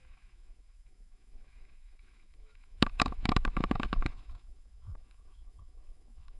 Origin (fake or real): fake